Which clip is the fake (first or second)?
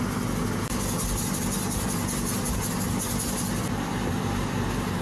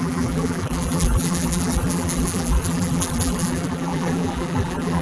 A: second